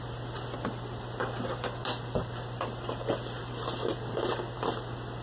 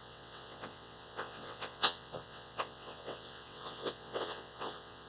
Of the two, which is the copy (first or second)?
second